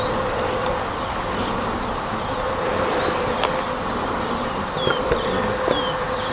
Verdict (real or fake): real